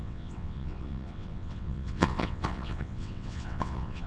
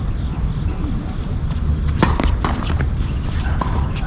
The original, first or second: second